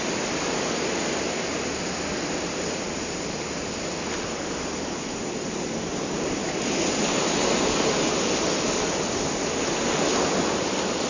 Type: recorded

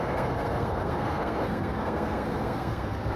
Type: remade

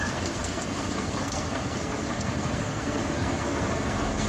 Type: remade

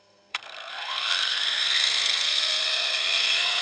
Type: remade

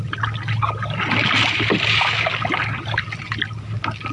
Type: recorded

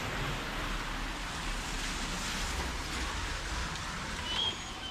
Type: recorded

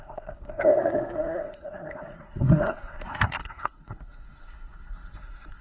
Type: remade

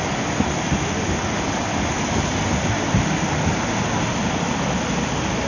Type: recorded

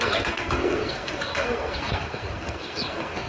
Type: remade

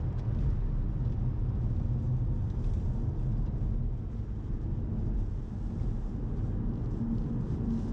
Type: recorded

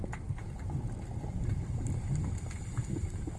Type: recorded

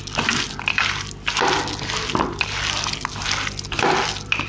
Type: recorded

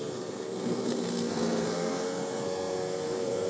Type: remade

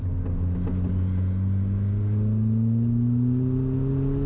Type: recorded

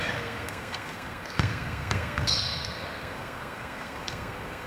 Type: remade